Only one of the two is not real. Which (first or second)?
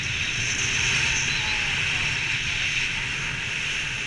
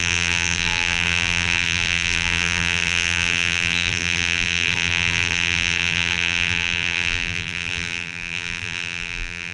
second